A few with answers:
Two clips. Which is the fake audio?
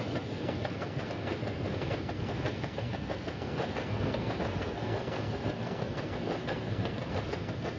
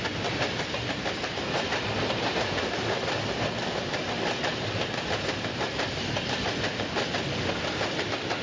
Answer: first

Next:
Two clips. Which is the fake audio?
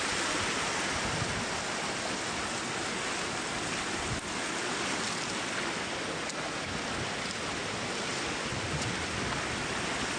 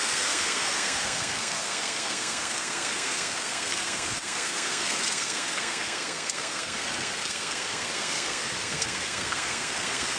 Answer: second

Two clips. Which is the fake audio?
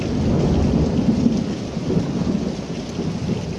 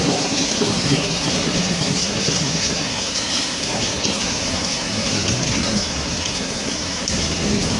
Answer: second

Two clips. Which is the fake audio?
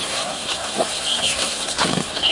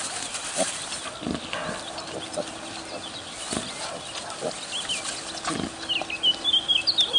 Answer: first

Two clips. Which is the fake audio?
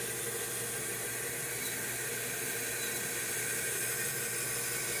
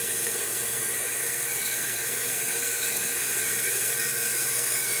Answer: second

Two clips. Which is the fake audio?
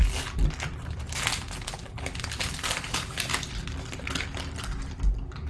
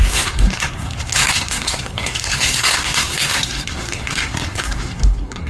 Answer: second